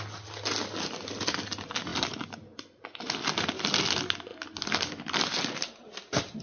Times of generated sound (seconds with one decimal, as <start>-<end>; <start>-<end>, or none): none